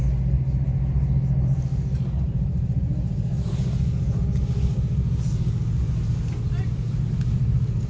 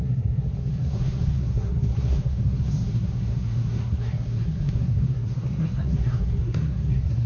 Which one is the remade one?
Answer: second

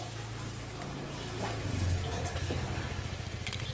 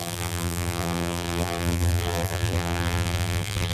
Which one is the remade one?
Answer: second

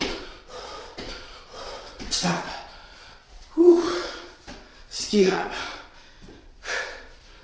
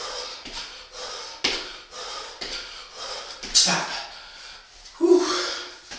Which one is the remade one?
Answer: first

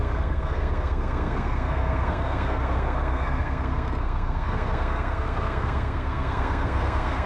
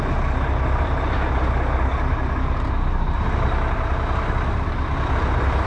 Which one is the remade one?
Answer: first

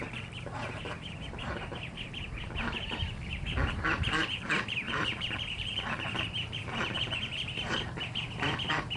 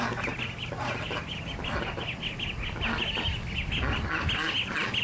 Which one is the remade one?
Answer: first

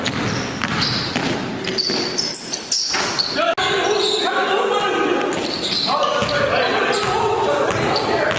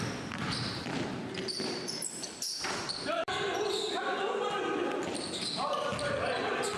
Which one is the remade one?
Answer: second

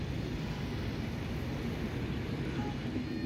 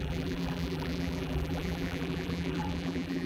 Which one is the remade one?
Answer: second